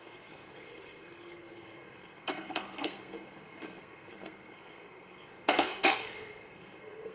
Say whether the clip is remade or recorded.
remade